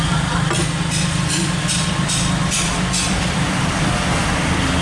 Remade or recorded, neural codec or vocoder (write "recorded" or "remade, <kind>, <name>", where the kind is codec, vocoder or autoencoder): remade, vocoder, BigVGAN v2